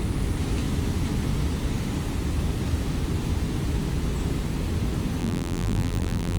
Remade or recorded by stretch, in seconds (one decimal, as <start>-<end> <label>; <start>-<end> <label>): 0.0-5.2 recorded; 5.2-6.4 remade